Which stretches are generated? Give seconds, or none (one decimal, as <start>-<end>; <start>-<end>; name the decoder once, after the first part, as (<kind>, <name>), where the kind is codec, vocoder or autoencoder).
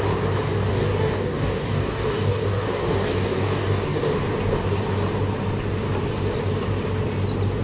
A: 0.7-4.1 (codec, DAC)